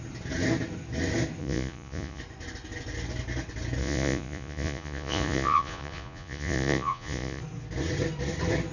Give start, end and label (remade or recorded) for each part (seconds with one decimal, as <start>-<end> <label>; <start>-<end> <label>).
0.0-1.4 recorded; 1.4-2.2 remade; 2.2-3.8 recorded; 3.8-7.4 remade; 7.4-8.7 recorded